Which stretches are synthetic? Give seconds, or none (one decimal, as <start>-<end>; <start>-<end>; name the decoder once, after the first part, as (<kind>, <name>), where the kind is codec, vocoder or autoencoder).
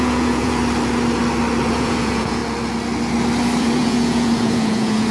0.0-0.6 (vocoder, Vocos); 1.7-2.4; 3.6-5.1